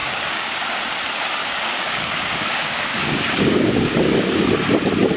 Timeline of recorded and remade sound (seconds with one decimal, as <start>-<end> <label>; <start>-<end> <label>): 0.0-0.8 remade; 0.8-1.4 recorded; 1.4-4.5 remade; 4.5-5.2 recorded